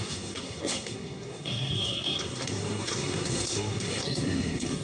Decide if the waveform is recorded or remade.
remade